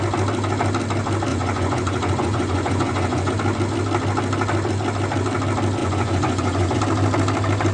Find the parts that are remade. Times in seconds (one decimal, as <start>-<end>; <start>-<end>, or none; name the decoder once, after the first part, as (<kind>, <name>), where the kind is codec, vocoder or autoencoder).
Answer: 1.3-3.3 (vocoder, Vocos); 5.8-6.8